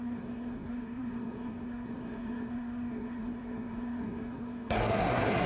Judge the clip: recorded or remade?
remade